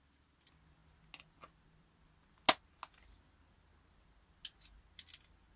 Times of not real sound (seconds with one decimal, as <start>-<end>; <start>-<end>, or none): none